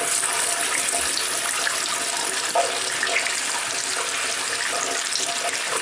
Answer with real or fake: real